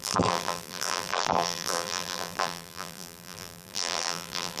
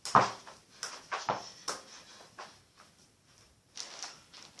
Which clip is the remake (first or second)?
first